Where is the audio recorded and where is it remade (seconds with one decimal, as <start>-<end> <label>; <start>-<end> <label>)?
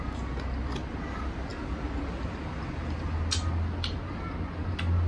0.0-5.1 recorded